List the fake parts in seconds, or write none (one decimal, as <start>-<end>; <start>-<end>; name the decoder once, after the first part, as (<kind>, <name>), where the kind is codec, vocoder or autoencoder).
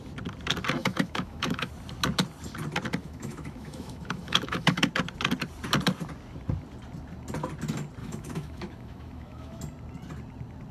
0.8-1.7 (autoencoder, DAC-VAE); 3.0-4.9; 8.0-9.6